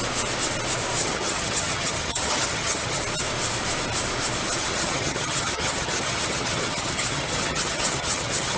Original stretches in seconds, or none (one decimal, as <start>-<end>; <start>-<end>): 0.0-1.0; 3.0-4.6